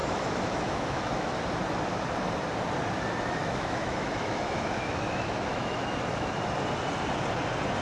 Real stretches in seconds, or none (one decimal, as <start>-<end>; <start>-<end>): 1.4-3.4; 6.3-7.8